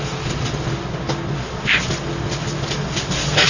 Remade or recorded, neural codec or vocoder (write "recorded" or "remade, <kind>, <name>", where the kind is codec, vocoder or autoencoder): recorded